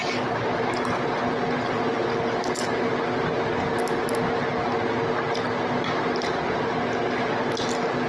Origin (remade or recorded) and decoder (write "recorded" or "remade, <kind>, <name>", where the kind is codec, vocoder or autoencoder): recorded